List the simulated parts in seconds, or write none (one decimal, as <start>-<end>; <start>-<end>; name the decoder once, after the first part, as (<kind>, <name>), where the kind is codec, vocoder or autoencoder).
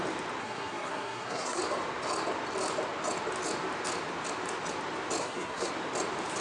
0.4-1.6 (codec, SNAC); 5.2-5.7